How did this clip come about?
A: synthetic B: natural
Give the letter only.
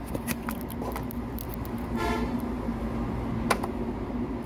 B